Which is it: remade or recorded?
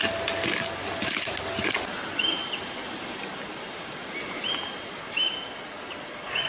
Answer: recorded